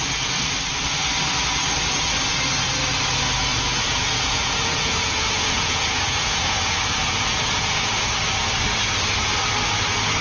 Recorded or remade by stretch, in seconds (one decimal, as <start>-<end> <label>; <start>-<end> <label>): 0.0-3.5 recorded; 3.5-8.0 remade; 8.0-10.2 recorded